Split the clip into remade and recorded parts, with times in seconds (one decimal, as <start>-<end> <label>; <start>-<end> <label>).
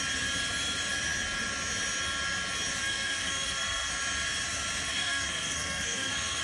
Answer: 0.0-2.8 recorded; 2.8-3.9 remade; 3.9-4.9 recorded; 4.9-6.4 remade